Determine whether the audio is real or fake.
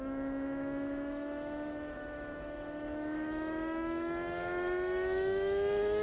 fake